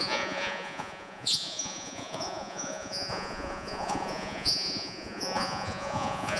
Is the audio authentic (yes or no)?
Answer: no